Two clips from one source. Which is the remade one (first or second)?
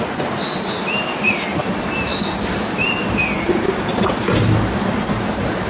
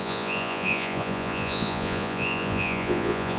second